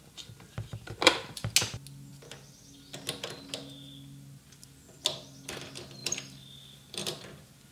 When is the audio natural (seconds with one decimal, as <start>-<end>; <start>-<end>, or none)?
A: 0.0-6.0; 7.2-7.7